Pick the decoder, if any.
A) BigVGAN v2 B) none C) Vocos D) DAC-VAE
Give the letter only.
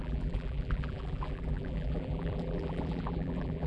A